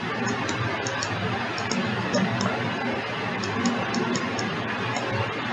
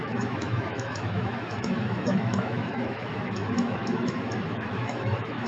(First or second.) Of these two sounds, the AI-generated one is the second